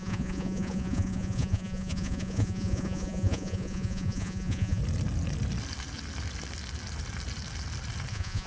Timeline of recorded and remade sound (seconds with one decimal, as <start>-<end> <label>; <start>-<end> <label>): 0.0-4.8 remade; 4.8-8.1 recorded; 8.1-8.5 remade